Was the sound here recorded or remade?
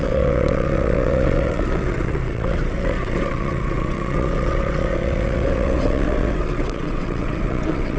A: remade